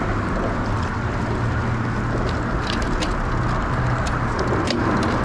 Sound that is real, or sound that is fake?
real